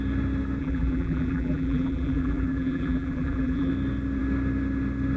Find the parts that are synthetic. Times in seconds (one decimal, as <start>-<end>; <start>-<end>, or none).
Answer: 0.6-3.7